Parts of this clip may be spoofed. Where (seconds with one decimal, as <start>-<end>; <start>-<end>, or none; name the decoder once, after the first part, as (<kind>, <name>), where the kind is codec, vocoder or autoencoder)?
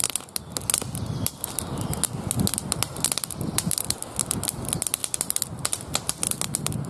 none